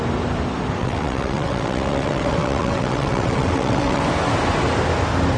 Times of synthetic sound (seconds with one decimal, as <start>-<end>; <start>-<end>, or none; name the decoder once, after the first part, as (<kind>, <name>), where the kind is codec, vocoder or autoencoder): 0.8-4.0 (vocoder, WaveNeXt)